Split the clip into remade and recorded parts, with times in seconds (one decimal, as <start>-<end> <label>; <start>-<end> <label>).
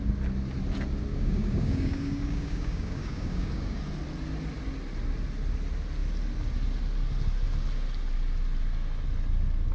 0.0-1.1 recorded; 1.1-3.8 remade; 3.8-9.7 recorded